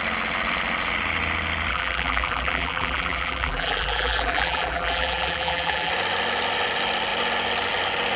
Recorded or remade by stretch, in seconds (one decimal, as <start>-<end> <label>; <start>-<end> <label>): 0.0-1.7 recorded; 1.7-5.9 remade; 5.9-8.2 recorded